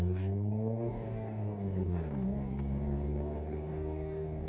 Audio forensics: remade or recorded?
remade